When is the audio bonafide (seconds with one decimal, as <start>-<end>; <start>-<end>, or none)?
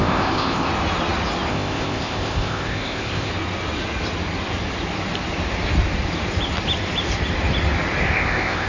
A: 0.7-1.5; 3.3-8.0